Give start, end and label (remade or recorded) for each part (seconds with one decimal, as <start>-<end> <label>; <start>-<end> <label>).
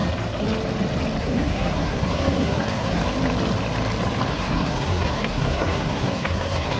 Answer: 0.0-1.2 recorded; 1.2-3.0 remade; 3.0-4.3 recorded; 4.3-6.8 remade